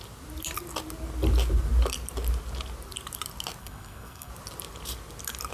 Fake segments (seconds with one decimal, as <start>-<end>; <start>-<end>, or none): 3.6-4.3